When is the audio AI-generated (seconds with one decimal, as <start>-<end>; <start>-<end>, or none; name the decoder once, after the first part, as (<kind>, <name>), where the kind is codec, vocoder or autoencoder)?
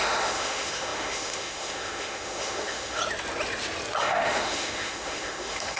0.0-3.0 (autoencoder, DAC-VAE); 4.0-5.8